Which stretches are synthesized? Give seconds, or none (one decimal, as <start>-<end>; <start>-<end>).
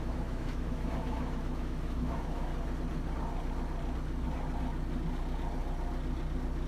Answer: 0.0-2.5